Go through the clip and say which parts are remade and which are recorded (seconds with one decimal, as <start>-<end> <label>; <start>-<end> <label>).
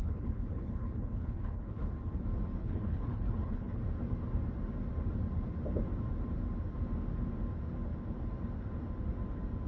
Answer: 0.0-1.9 remade; 1.9-2.6 recorded; 2.6-3.8 remade; 3.8-9.7 recorded